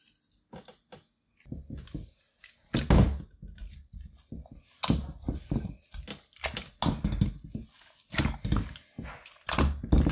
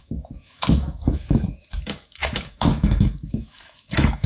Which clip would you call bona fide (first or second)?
first